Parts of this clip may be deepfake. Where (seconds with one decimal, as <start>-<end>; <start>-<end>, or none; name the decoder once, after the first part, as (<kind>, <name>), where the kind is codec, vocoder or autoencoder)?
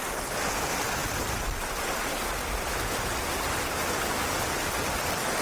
none